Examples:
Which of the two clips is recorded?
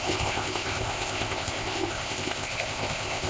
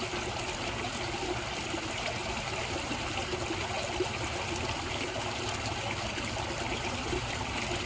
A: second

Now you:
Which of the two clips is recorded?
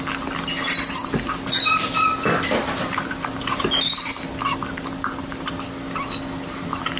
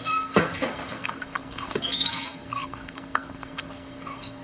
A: first